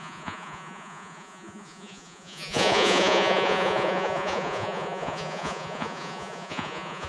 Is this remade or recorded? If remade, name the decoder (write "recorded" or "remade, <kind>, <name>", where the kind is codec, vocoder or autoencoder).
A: remade, vocoder, Vocos